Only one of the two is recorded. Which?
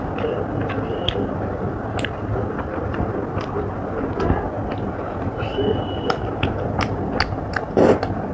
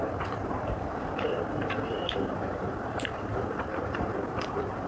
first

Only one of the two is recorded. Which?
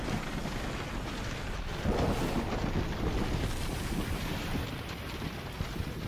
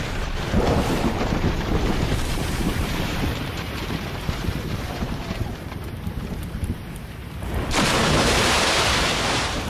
first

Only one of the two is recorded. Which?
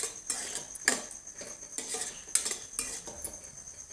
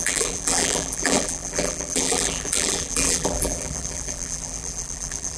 first